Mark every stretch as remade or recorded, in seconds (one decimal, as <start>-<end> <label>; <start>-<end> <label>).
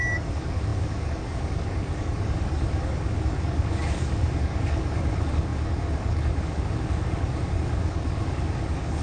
0.0-9.0 remade